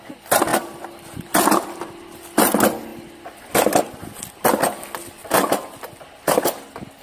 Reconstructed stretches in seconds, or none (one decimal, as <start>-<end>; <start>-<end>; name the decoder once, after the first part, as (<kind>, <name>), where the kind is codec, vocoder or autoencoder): 0.5-1.5 (vocoder, BigVGAN v2); 5.2-6.0